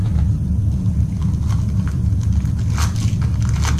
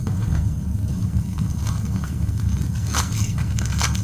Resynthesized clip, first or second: second